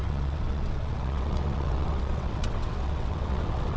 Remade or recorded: remade